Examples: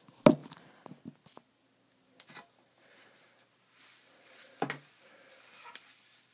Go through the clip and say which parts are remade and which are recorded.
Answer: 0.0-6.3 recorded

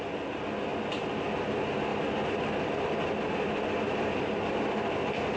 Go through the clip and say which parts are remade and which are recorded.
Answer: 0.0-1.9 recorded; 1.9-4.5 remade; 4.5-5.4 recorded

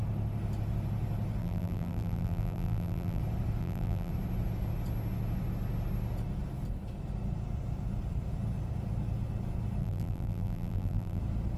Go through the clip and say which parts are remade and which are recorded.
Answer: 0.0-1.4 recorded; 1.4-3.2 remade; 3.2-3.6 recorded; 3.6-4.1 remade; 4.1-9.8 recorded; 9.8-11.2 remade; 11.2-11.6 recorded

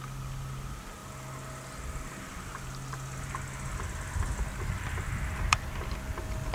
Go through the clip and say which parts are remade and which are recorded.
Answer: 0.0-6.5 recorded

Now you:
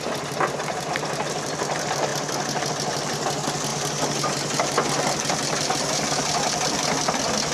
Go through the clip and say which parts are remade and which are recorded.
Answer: 0.0-7.5 recorded

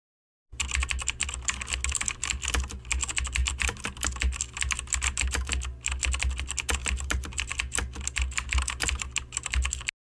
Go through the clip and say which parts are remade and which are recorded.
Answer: 0.0-6.8 recorded; 6.8-7.4 remade; 7.4-10.2 recorded